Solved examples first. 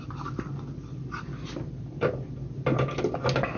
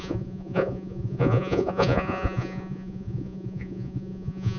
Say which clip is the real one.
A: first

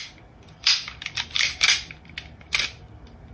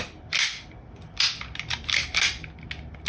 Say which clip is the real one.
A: second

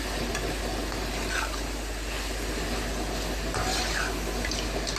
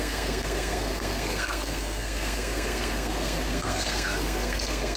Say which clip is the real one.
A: first